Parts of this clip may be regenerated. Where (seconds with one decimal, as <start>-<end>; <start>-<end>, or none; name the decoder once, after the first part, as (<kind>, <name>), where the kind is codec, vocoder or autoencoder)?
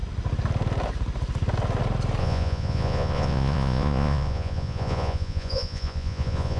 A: 2.2-6.6 (vocoder, Vocos)